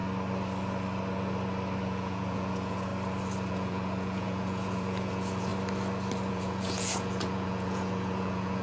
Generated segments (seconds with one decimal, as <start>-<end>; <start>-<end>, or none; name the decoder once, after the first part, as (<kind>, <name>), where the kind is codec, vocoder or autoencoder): 1.8-2.9 (vocoder, Vocos); 3.5-5.5; 6.3-8.6